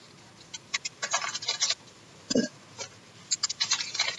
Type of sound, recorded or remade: recorded